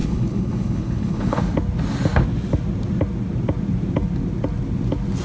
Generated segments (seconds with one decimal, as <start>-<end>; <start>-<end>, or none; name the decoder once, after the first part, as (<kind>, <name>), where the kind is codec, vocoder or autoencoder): 0.0-1.4 (codec, HILCodec)